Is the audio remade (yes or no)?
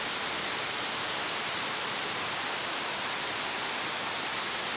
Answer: no